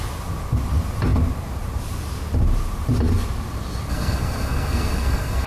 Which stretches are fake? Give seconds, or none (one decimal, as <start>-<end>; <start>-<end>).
3.9-5.5